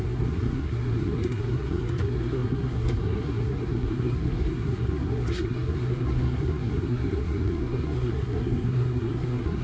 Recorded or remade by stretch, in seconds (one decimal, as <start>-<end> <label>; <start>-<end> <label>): 0.0-9.6 remade